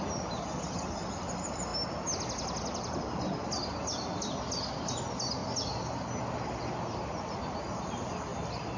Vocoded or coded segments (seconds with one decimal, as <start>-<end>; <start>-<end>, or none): none